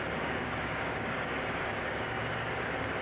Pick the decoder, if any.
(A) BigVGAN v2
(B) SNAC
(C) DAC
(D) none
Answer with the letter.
C